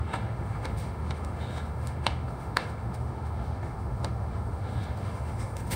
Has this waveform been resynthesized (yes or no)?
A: yes